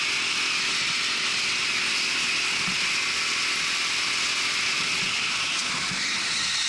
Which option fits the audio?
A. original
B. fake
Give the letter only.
A